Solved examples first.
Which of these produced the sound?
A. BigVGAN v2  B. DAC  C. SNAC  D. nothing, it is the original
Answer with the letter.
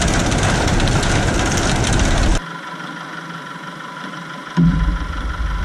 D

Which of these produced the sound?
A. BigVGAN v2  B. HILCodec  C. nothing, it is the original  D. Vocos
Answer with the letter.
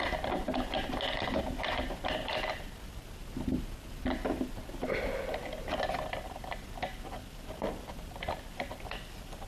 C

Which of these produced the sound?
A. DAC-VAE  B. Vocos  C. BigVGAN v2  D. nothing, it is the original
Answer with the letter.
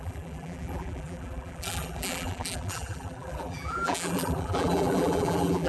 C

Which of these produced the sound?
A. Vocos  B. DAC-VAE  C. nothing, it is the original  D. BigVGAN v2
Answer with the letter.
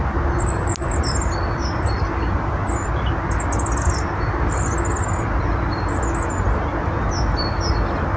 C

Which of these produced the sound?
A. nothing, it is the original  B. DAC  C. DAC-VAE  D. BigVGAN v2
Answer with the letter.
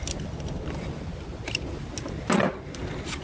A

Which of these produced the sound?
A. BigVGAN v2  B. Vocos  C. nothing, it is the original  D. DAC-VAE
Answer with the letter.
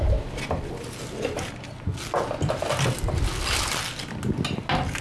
C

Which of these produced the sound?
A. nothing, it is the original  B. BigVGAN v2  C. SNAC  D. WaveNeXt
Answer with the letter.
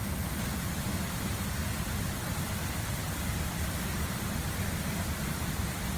A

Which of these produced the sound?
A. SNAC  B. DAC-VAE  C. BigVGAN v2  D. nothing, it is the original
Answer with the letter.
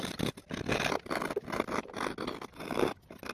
D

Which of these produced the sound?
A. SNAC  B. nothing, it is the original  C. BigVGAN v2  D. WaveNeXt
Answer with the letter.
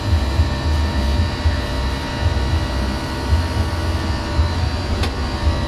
B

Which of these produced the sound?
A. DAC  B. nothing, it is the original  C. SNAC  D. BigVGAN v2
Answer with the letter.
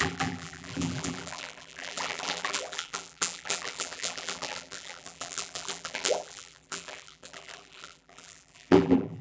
D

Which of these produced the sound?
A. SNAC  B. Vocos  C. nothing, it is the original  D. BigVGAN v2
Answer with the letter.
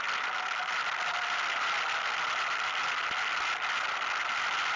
C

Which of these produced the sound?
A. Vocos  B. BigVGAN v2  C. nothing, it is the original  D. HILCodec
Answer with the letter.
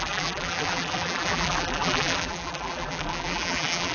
B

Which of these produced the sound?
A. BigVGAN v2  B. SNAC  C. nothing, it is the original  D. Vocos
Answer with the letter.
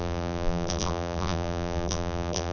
A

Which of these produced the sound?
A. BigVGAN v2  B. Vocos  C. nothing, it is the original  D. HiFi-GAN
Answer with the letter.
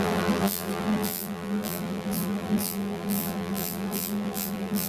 A